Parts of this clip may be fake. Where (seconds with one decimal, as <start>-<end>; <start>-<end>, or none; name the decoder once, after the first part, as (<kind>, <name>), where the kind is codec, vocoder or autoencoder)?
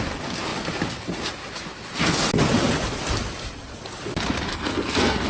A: 4.5-5.3 (codec, SNAC)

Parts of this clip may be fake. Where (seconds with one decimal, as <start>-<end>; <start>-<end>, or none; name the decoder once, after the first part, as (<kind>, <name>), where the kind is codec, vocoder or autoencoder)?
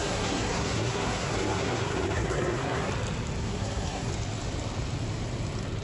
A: 0.0-2.9 (codec, SNAC); 3.4-4.1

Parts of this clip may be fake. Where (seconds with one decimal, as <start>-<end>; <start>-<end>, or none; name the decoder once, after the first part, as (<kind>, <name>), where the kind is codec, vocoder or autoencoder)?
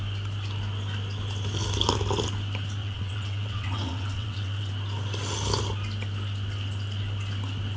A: 2.8-4.7 (vocoder, WaveNeXt)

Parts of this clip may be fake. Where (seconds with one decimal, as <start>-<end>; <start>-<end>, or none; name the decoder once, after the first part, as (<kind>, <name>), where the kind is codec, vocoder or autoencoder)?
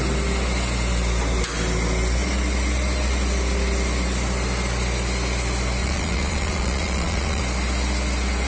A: 5.8-7.4 (vocoder, Vocos)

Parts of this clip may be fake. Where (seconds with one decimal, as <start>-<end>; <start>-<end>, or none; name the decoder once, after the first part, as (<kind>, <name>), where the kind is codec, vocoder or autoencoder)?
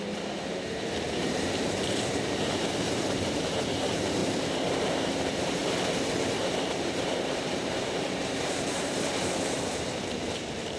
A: 0.0-5.6 (vocoder, BigVGAN v2); 6.4-10.8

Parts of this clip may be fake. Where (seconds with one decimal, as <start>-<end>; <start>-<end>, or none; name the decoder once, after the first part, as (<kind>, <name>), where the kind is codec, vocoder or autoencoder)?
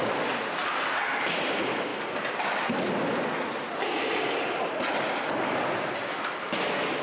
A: 0.6-1.3 (vocoder, BigVGAN v2)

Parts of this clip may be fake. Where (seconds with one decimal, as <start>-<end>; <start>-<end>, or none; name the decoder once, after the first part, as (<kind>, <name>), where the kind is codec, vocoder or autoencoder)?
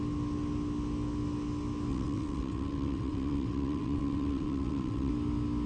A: 1.9-5.1 (vocoder, WaveNeXt)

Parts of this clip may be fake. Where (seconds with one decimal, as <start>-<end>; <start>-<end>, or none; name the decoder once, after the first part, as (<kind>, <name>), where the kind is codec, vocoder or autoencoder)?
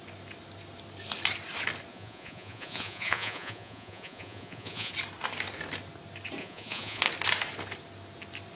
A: 1.9-4.9 (vocoder, Vocos); 6.4-7.0